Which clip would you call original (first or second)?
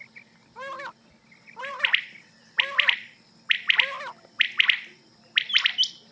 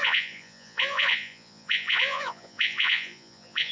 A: first